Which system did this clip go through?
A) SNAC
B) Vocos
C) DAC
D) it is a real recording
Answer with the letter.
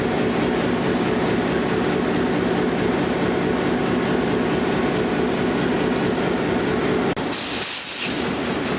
D